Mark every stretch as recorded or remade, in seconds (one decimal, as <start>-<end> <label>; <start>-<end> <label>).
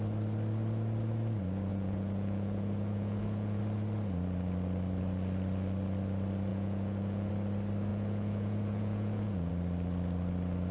0.0-1.7 recorded; 1.7-3.6 remade; 3.6-6.5 recorded; 6.5-7.3 remade; 7.3-7.9 recorded; 7.9-9.5 remade; 9.5-10.7 recorded